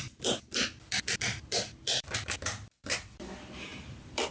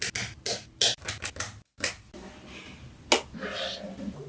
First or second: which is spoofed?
first